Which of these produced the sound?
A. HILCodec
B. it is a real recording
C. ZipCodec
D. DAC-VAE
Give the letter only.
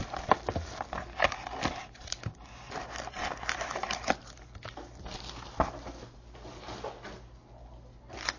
B